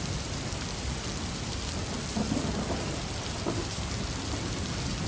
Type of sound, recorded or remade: recorded